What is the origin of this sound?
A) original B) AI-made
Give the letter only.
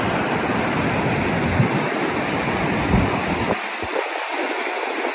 A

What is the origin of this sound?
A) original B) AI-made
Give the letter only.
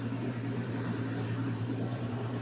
B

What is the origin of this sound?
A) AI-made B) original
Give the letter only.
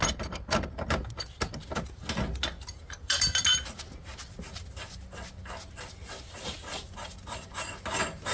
B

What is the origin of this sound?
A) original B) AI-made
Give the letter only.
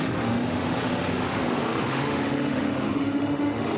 B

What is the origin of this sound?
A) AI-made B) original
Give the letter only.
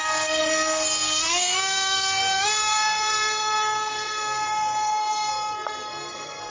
A